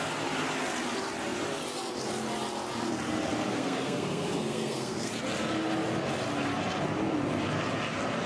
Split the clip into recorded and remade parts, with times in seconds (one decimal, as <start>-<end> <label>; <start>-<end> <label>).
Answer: 0.0-3.5 recorded; 3.5-5.1 remade; 5.1-8.3 recorded